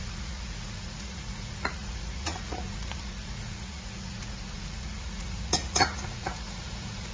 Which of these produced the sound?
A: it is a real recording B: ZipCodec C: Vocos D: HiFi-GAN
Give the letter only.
C